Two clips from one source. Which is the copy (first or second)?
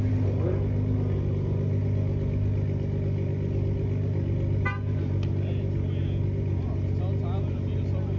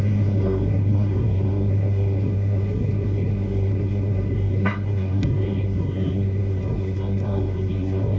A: second